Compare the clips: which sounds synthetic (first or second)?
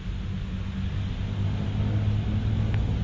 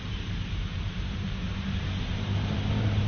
second